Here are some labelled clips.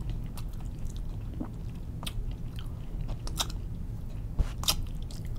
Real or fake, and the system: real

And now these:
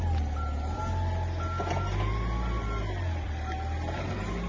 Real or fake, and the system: real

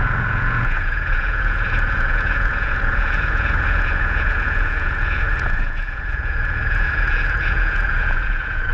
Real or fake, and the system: fake, vocoder, Vocos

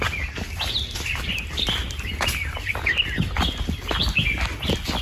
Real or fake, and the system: real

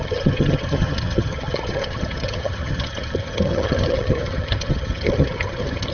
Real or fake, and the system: fake, vocoder, HiFi-GAN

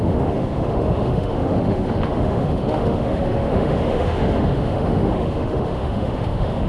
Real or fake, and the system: fake, autoencoder, DAC-VAE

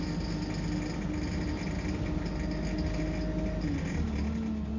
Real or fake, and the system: real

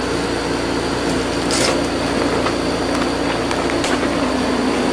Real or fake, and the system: real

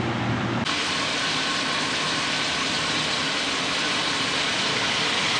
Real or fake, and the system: real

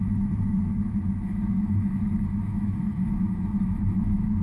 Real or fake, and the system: fake, autoencoder, DAC-VAE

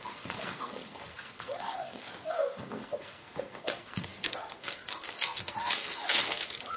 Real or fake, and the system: fake, codec, SNAC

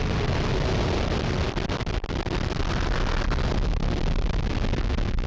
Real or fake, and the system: real